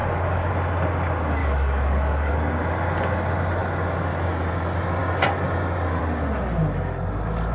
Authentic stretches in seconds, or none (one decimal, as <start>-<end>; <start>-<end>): 0.5-1.4; 2.3-7.5